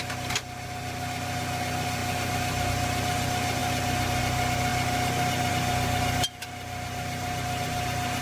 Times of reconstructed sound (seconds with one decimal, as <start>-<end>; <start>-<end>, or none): none